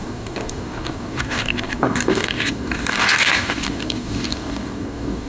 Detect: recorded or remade remade